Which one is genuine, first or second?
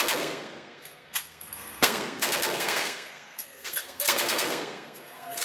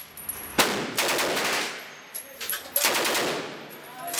second